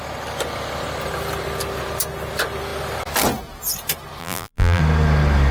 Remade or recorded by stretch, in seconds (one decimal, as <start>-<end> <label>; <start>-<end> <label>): 0.0-4.2 recorded; 4.2-4.8 remade; 4.8-5.5 recorded